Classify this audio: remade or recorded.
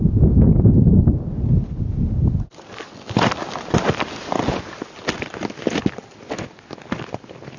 recorded